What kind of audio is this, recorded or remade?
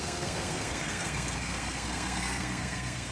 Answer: remade